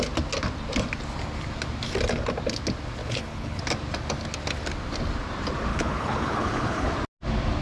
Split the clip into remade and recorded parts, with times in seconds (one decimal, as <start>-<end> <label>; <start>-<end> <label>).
0.0-3.0 recorded; 3.0-3.6 remade; 3.6-5.7 recorded; 5.7-6.9 remade; 6.9-7.6 recorded